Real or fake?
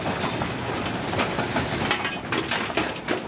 real